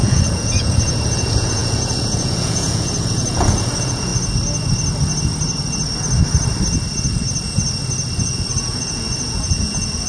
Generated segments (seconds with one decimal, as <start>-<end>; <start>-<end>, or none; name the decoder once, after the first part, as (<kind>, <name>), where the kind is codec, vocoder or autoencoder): 0.0-4.1 (vocoder, Vocos); 8.2-10.1